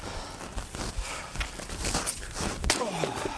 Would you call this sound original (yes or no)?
yes